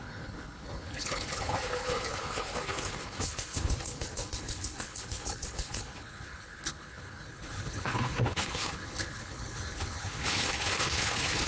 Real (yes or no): no